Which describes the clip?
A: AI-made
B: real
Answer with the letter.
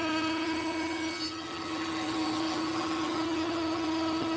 A